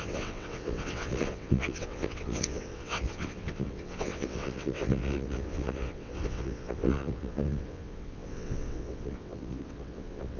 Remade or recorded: remade